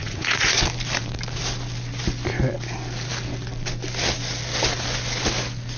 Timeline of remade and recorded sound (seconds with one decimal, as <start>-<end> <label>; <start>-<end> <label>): 0.0-0.6 remade; 0.6-5.8 recorded